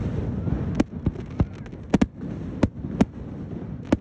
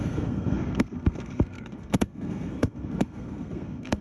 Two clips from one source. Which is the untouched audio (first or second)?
first